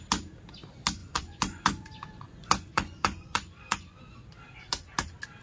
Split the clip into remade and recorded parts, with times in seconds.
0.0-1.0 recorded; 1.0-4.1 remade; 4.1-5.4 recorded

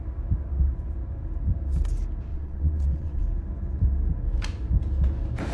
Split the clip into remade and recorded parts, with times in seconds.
0.0-2.3 recorded; 2.3-3.2 remade; 3.2-5.5 recorded

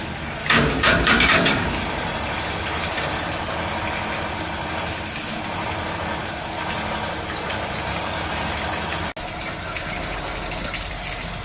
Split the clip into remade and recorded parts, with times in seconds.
0.0-0.4 recorded; 0.4-1.8 remade; 1.8-7.9 recorded; 7.9-8.5 remade; 8.5-11.4 recorded

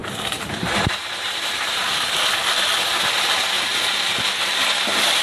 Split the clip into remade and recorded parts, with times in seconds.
0.0-2.8 remade; 2.8-5.2 recorded

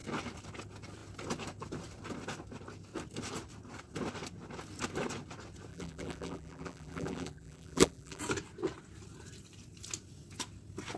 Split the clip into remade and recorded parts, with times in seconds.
0.0-5.7 recorded; 5.7-8.2 remade; 8.2-11.0 recorded